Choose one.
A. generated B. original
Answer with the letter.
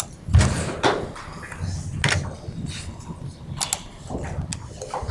B